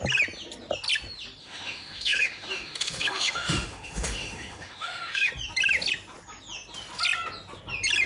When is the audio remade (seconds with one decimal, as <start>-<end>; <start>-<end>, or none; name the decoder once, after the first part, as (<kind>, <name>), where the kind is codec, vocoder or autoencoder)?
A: 1.4-5.3 (autoencoder, DAC-VAE)